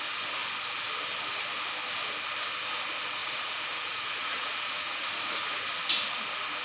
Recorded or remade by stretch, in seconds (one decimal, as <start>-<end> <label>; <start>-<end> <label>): 0.0-3.2 recorded; 3.2-5.6 remade; 5.6-6.6 recorded